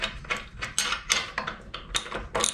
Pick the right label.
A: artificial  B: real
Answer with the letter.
B